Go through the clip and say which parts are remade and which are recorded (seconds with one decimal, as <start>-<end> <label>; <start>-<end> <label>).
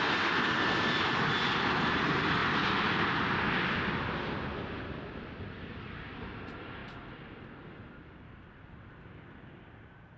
0.0-10.2 recorded